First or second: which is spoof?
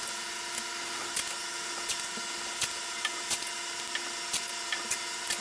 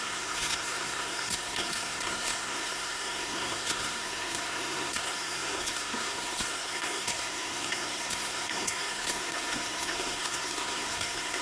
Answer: second